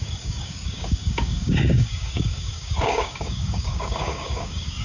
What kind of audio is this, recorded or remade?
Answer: remade